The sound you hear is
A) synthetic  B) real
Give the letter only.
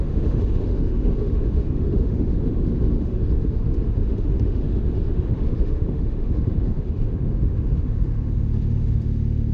A